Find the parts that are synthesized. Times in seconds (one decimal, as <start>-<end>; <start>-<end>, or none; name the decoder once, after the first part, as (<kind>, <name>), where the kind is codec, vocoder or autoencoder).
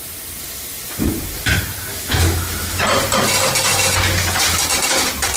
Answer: 1.9-2.8 (autoencoder, DAC-VAE)